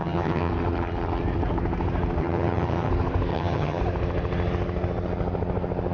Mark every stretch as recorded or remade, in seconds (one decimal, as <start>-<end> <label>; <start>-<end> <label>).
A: 0.0-0.5 remade; 0.5-2.2 recorded; 2.2-2.9 remade; 2.9-3.3 recorded; 3.3-3.8 remade; 3.8-5.9 recorded